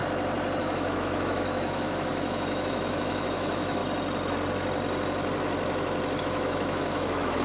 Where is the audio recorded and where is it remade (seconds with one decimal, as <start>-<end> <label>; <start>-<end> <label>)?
0.0-0.6 recorded; 0.6-3.8 remade; 3.8-6.2 recorded; 6.2-7.4 remade